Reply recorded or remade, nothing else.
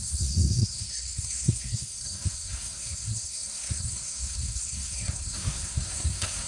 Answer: remade